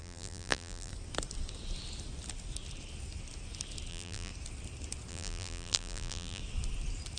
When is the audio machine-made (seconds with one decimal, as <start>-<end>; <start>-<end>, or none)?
0.0-0.9; 3.9-4.3; 5.1-6.4